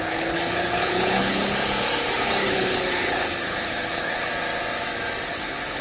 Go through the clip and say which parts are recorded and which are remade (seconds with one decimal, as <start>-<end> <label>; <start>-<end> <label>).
0.0-4.3 remade; 4.3-5.3 recorded; 5.3-5.8 remade